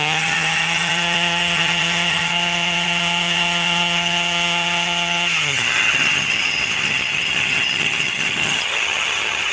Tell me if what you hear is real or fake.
fake